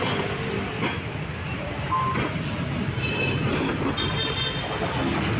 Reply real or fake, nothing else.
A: real